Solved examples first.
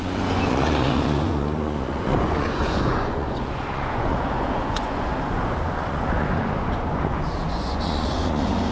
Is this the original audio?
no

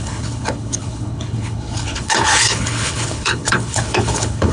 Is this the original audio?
no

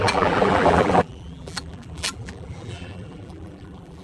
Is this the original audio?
no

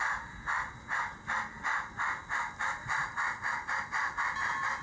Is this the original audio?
yes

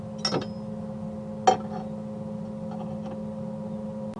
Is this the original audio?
yes